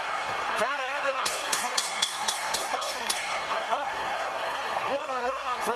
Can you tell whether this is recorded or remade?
remade